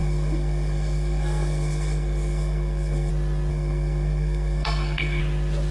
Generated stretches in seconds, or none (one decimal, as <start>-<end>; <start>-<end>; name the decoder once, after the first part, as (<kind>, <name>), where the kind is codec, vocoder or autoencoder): 0.0-3.1 (codec, SNAC); 3.5-5.2